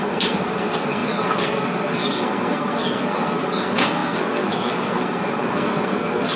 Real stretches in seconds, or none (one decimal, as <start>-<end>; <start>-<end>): none